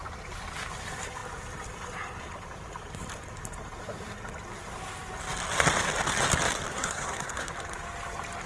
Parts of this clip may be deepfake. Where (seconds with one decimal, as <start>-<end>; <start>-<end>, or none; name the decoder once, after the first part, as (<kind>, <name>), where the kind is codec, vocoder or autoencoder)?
6.7-7.5 (codec, SNAC)